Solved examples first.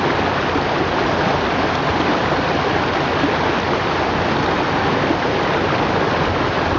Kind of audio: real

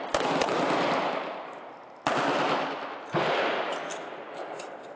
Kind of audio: real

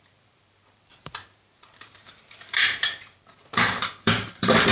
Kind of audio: fake